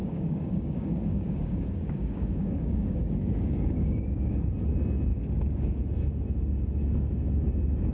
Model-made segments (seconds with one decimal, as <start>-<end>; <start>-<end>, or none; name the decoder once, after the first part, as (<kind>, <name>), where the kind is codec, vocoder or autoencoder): 0.0-4.5 (codec, DAC); 5.1-5.8

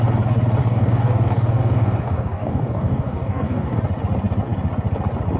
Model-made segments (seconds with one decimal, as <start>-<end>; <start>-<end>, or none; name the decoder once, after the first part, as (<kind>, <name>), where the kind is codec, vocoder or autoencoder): 0.6-3.8 (codec, DAC)

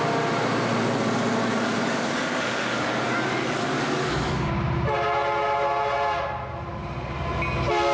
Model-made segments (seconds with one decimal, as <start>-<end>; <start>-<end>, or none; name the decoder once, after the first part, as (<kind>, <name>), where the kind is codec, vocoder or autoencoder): 1.5-4.5 (codec, DAC)

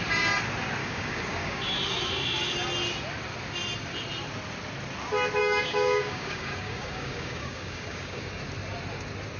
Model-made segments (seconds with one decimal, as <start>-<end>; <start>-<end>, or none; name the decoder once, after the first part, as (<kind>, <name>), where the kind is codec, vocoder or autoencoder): 0.8-1.6 (codec, DAC); 5.4-8.4